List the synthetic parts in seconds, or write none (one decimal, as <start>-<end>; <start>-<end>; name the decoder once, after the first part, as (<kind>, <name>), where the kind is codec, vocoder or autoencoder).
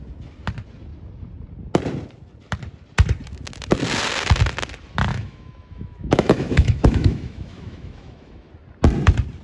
5.1-8.5 (autoencoder, DAC-VAE)